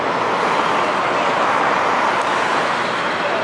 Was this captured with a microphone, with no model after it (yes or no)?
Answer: yes